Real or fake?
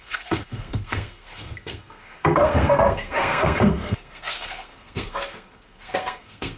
fake